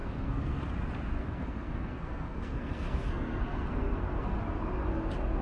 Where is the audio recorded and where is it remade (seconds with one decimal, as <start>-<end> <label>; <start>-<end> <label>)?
0.0-0.6 remade; 0.6-1.2 recorded; 1.2-4.4 remade; 4.4-5.4 recorded